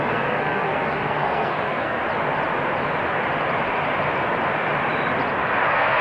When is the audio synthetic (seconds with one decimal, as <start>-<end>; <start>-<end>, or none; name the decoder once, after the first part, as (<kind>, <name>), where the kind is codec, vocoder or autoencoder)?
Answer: 0.0-2.0 (codec, SNAC); 5.6-6.0